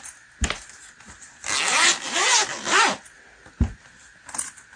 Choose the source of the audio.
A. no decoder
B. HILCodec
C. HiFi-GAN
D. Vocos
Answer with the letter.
A